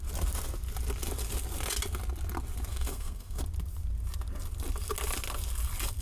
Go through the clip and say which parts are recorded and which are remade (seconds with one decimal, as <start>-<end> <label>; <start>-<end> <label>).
0.0-2.7 recorded; 2.7-3.4 remade; 3.4-6.0 recorded